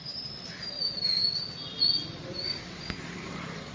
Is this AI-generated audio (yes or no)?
no